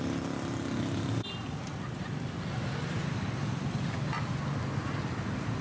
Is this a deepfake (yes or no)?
no